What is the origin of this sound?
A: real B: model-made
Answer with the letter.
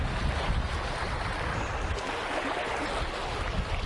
A